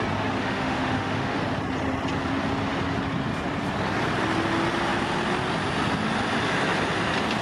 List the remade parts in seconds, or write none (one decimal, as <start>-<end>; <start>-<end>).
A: 0.4-1.4

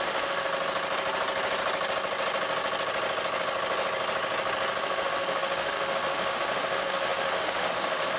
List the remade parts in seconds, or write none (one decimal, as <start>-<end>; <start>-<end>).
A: 0.0-0.5; 4.8-8.2

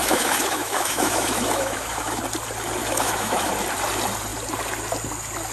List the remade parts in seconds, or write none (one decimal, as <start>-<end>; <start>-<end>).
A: 0.0-2.2; 2.8-3.5